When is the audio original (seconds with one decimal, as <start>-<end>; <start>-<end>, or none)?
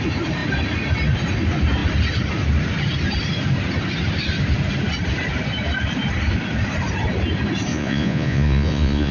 0.0-7.7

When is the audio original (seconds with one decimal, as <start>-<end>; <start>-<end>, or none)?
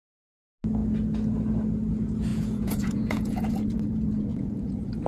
0.0-2.3; 3.5-4.3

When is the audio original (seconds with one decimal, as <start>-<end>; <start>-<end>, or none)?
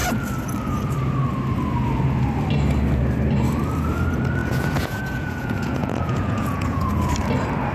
0.0-4.4; 6.9-7.7